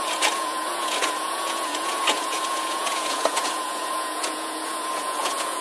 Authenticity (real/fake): fake